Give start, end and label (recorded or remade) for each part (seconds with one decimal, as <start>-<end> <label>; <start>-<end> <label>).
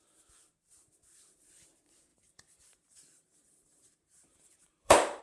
0.0-2.1 recorded; 2.1-5.2 remade